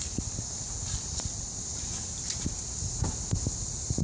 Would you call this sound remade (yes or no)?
no